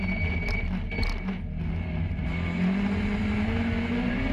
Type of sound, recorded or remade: recorded